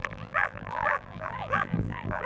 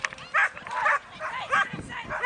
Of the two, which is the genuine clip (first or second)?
second